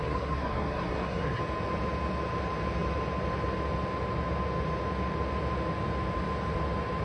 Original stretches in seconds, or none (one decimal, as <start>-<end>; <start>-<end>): 1.4-7.0